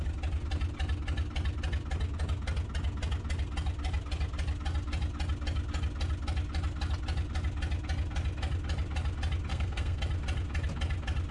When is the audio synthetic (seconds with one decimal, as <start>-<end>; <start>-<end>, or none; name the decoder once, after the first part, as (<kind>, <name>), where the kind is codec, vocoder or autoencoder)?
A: 9.5-10.0 (codec, SNAC)